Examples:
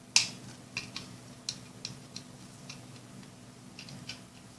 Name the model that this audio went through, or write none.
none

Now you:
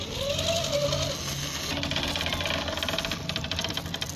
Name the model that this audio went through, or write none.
none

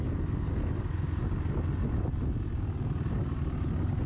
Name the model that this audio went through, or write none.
none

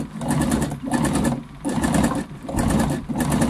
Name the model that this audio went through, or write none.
none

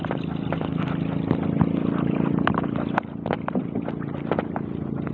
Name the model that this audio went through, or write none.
none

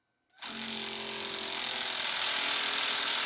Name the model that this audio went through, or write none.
none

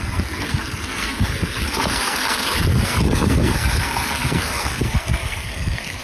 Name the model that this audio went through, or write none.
codec, SNAC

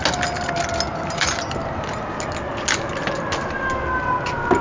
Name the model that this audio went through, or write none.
none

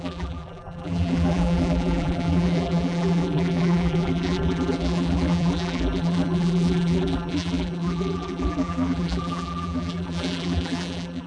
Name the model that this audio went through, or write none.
vocoder, BigVGAN v2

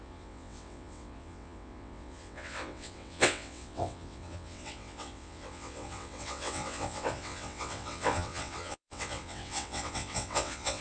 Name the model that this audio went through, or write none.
vocoder, WaveNeXt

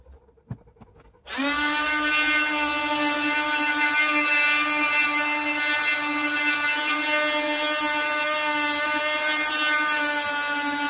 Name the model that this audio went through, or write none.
none